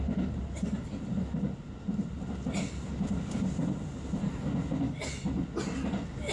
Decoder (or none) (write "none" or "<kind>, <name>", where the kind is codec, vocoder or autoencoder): none